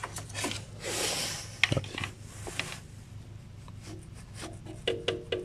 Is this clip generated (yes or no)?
no